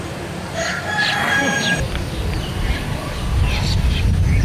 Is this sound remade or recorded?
recorded